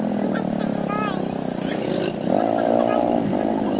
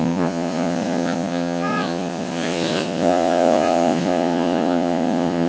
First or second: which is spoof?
second